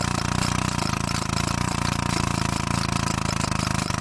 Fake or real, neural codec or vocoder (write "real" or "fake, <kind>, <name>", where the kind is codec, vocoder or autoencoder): real